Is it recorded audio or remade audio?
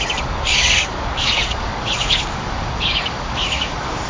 remade